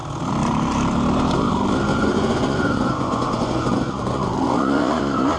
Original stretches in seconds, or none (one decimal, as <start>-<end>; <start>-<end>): 0.0-1.9; 5.0-5.4